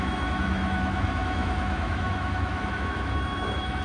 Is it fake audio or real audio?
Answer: fake